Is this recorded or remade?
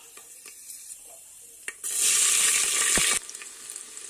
recorded